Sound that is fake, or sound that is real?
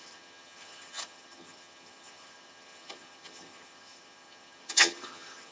fake